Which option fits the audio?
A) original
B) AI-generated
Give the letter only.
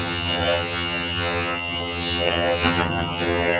B